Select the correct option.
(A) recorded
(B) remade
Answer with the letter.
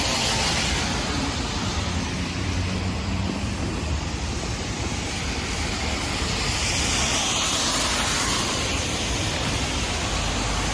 B